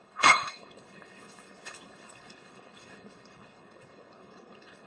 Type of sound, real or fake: fake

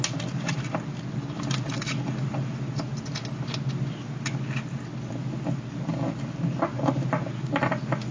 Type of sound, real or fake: real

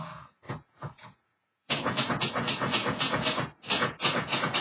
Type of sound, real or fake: fake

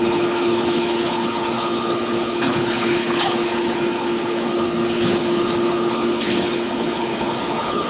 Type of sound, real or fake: fake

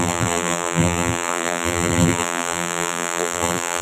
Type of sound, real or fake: fake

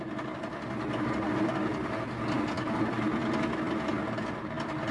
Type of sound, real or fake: real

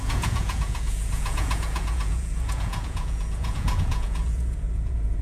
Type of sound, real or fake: fake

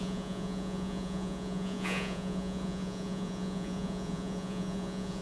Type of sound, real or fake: fake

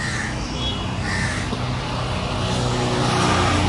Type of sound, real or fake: real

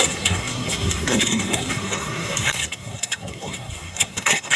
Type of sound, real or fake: fake